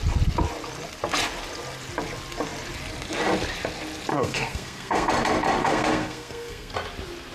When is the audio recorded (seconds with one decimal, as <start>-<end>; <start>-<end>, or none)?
0.0-4.1; 5.1-5.6; 6.7-7.3